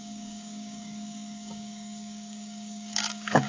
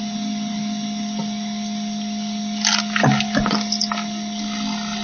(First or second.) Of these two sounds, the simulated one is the first